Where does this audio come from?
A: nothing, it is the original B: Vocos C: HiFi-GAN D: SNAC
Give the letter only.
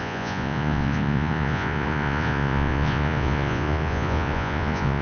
B